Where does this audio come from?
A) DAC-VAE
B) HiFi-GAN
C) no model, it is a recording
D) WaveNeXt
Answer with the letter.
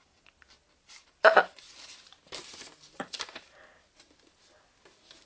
C